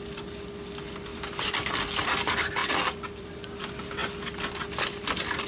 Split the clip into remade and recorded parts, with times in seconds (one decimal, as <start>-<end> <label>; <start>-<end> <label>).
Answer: 0.0-1.1 recorded; 1.1-1.8 remade; 1.8-2.6 recorded; 2.6-3.3 remade; 3.3-5.5 recorded